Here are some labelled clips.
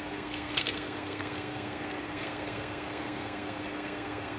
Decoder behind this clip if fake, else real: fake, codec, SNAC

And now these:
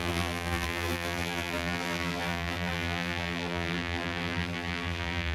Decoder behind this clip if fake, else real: fake, vocoder, BigVGAN v2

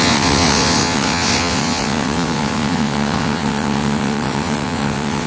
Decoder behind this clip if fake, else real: fake, vocoder, WaveNeXt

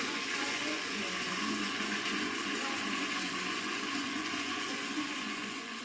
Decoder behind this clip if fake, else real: fake, vocoder, Vocos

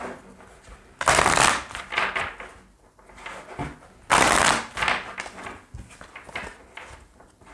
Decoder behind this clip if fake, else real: real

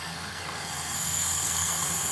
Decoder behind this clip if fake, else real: fake, codec, SNAC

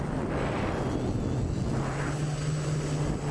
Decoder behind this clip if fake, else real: real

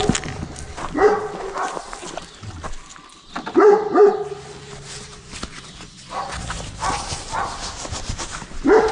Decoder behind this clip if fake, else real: real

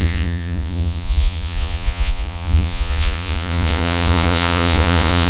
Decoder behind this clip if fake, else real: fake, vocoder, Vocos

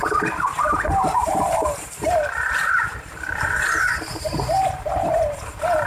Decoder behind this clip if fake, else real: fake, vocoder, BigVGAN v2